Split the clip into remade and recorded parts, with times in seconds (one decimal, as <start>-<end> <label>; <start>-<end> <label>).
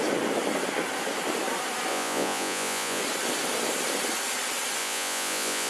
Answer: 0.0-1.9 recorded; 1.9-3.0 remade; 3.0-4.8 recorded; 4.8-5.7 remade